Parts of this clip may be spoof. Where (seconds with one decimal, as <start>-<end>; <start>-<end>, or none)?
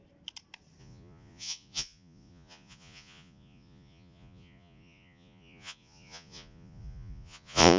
0.8-7.8